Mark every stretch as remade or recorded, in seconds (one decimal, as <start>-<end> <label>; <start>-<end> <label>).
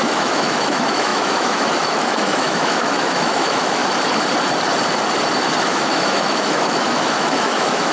0.0-3.8 remade; 3.8-5.7 recorded; 5.7-7.9 remade